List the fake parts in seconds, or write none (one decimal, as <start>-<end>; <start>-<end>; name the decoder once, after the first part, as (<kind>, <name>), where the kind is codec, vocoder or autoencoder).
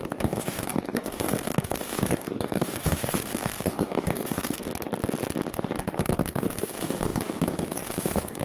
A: 0.0-4.7 (codec, DAC); 5.5-8.4